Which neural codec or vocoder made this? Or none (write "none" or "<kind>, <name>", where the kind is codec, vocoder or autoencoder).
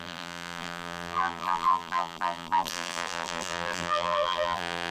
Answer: vocoder, BigVGAN v2